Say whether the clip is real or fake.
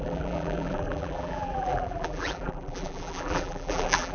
fake